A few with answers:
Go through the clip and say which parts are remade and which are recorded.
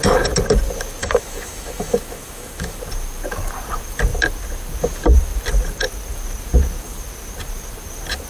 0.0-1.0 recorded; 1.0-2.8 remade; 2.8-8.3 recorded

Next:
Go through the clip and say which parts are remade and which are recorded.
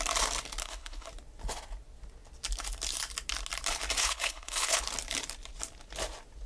0.0-0.6 recorded; 0.6-1.1 remade; 1.1-4.0 recorded; 4.0-4.8 remade; 4.8-6.5 recorded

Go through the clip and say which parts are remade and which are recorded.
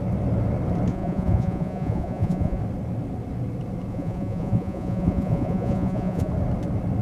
0.0-0.9 recorded; 0.9-2.6 remade; 2.6-3.9 recorded; 3.9-6.3 remade; 6.3-7.0 recorded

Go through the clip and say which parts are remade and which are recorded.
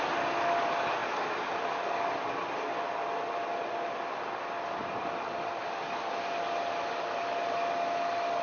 0.0-8.4 recorded